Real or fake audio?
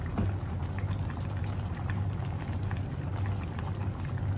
real